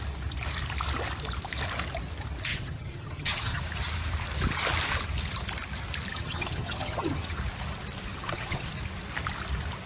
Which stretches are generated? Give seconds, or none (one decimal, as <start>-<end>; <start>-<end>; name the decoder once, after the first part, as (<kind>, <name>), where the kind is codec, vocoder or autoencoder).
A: 2.5-3.6 (vocoder, HiFi-GAN); 6.1-7.4; 8.1-8.7